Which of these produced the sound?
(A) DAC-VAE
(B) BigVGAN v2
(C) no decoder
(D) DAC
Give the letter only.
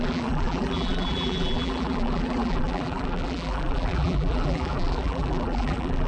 B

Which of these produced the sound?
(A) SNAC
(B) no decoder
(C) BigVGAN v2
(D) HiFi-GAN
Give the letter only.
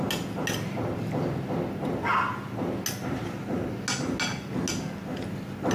B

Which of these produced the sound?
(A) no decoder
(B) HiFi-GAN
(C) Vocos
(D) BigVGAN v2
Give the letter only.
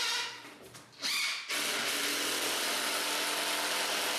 A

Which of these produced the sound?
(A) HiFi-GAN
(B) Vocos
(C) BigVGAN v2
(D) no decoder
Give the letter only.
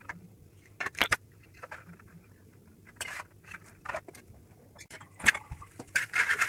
C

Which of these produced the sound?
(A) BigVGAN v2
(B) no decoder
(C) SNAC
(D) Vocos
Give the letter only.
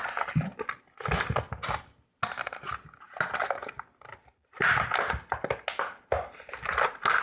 B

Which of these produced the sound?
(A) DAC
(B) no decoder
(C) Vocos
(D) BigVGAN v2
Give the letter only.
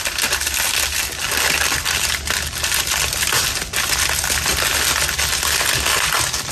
B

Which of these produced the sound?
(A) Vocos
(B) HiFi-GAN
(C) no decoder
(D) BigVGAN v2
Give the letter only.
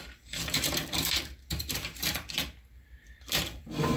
D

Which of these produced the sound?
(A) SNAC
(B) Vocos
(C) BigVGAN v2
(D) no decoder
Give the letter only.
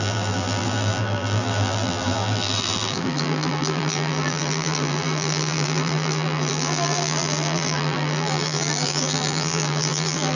C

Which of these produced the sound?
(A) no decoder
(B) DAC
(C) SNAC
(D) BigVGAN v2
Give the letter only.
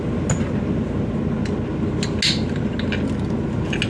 A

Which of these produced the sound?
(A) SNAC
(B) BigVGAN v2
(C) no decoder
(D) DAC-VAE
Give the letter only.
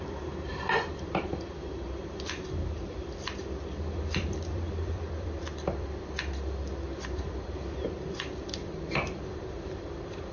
B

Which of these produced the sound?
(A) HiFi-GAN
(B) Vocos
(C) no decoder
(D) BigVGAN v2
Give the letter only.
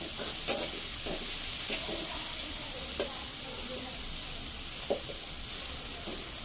C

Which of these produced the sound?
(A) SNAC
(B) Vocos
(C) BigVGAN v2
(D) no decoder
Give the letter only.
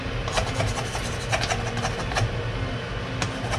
D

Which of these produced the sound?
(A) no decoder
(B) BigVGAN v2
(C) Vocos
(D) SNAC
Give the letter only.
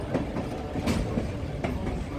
A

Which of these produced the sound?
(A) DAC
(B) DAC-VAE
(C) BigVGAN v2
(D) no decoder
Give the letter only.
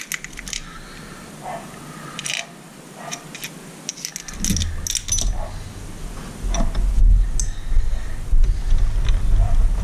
D